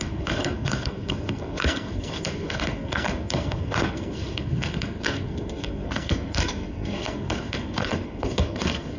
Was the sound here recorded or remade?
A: remade